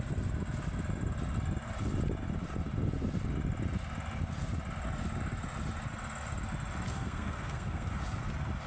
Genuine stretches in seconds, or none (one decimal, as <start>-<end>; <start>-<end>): 0.0-6.9; 8.0-8.7